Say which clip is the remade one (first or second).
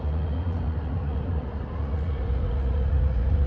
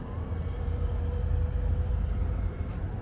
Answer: first